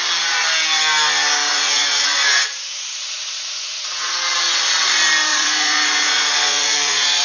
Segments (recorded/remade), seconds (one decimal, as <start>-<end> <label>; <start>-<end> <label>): 0.0-1.5 recorded; 1.5-4.1 remade; 4.1-5.3 recorded; 5.3-7.2 remade